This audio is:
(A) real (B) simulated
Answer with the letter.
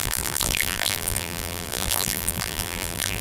B